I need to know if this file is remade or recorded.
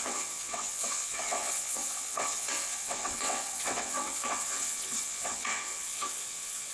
remade